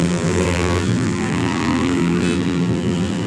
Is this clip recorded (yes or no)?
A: no